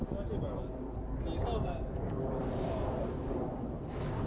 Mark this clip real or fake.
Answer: real